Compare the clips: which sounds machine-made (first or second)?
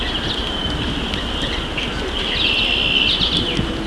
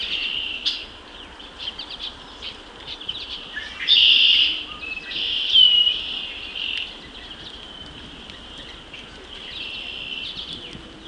second